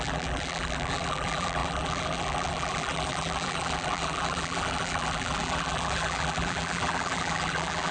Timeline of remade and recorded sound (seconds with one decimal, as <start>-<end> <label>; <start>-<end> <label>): 0.0-7.9 remade